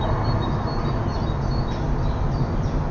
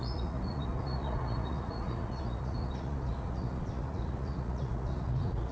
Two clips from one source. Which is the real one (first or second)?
first